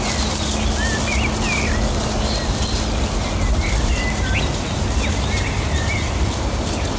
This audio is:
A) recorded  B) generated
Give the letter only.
A